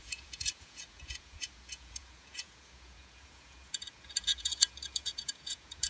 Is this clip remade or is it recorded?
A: remade